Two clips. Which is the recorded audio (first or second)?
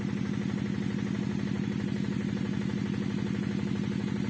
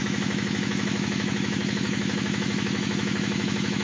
first